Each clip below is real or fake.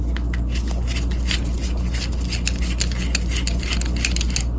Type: real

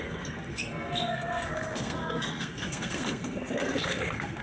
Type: fake